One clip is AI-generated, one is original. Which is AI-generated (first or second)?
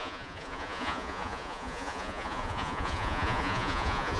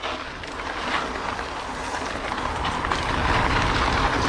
first